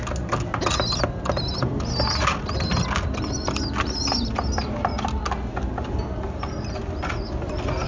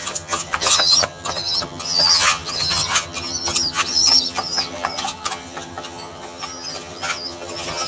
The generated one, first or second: second